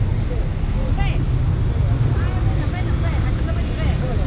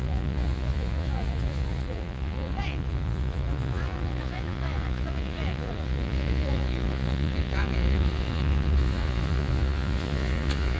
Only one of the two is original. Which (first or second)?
first